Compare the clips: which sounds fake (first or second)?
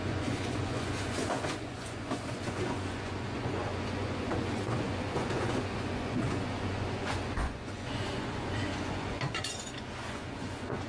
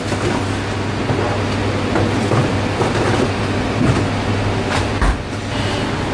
first